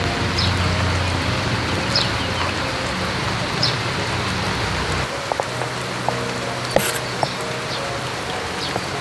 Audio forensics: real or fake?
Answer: real